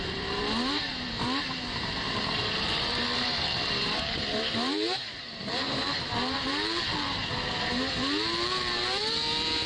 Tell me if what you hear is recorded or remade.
remade